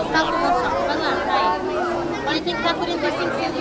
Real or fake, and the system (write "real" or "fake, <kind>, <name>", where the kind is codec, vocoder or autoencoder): real